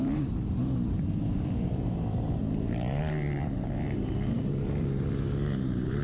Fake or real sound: fake